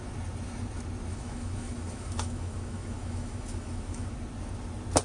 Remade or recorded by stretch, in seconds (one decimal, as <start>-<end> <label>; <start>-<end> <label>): 0.0-1.1 recorded; 1.1-4.1 remade; 4.1-5.0 recorded

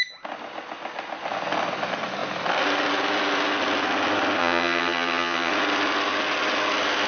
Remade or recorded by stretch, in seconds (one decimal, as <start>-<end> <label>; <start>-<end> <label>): 0.0-4.4 recorded; 4.4-5.5 remade; 5.5-7.1 recorded